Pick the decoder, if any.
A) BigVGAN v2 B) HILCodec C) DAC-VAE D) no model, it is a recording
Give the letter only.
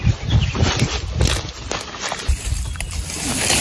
D